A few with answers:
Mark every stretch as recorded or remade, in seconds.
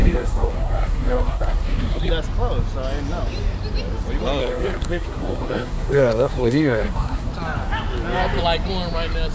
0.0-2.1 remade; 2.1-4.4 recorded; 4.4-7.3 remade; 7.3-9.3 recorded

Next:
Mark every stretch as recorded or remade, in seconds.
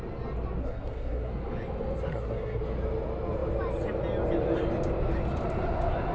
0.0-0.6 recorded; 0.6-1.3 remade; 1.3-2.1 recorded; 2.1-2.6 remade; 2.6-6.1 recorded